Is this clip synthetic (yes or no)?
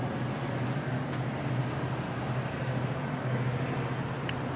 no